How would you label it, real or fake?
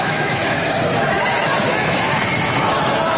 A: fake